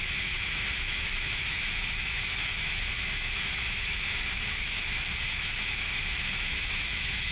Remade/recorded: remade